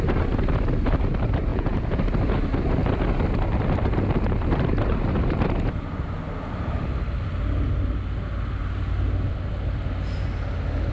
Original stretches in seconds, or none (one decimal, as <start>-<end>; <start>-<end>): 0.0-1.5; 2.0-10.9